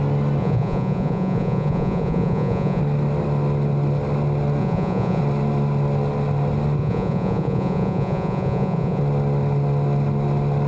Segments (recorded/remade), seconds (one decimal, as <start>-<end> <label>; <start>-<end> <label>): 0.0-0.4 recorded; 0.4-2.8 remade; 2.8-4.6 recorded; 4.6-5.2 remade; 5.2-6.8 recorded; 6.8-9.0 remade; 9.0-10.7 recorded